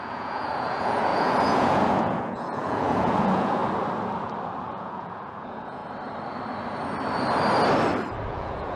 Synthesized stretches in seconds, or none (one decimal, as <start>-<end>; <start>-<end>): 0.0-3.6; 4.6-5.8; 8.3-8.8